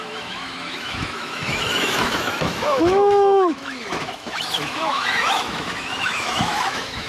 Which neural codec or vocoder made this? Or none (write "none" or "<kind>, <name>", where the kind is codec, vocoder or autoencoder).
autoencoder, DAC-VAE